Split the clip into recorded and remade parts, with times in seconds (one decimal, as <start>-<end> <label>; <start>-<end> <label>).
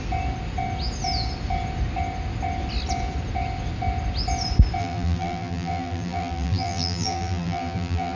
0.0-4.8 recorded; 4.8-8.2 remade